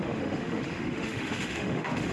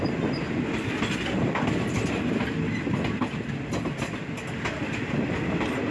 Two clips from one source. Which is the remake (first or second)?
first